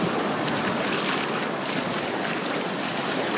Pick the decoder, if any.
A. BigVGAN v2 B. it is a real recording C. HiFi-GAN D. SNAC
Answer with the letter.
B